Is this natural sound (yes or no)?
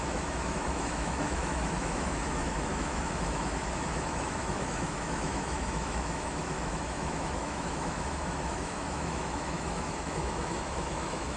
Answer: no